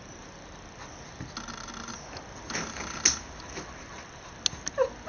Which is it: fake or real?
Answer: real